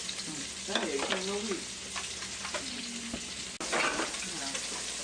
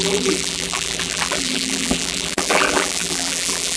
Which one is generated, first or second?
second